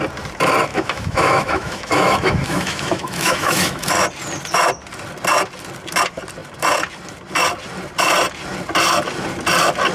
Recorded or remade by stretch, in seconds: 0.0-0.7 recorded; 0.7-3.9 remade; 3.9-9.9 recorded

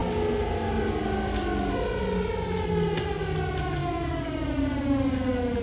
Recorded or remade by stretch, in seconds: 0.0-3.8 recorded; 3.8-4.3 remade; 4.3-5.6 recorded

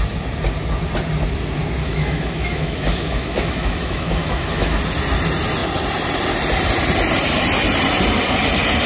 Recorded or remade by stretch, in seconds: 0.0-1.8 recorded; 1.8-4.8 remade; 4.8-8.9 recorded